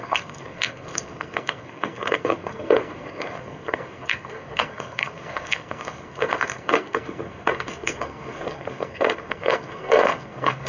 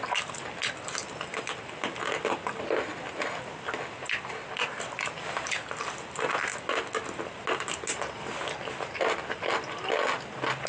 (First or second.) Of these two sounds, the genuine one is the second